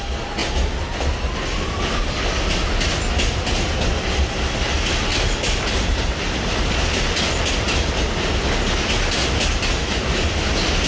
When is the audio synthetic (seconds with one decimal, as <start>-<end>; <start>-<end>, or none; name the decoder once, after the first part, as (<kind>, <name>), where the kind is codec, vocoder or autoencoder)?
5.1-6.7 (vocoder, BigVGAN v2)